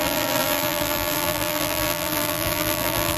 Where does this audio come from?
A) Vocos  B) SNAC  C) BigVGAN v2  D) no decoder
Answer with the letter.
C